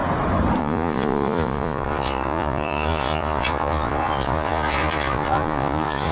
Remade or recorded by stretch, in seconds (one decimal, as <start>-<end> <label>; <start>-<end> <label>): 0.0-0.6 recorded; 0.6-6.1 remade